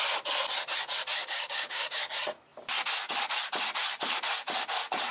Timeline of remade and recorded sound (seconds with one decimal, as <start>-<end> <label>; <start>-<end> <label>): 0.0-1.2 recorded; 1.2-2.0 remade; 2.0-5.1 recorded